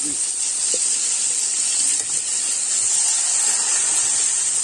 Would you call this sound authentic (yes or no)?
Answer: yes